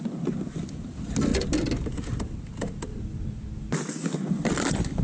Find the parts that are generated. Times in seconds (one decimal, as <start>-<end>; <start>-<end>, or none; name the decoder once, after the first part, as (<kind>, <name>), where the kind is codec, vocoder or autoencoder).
none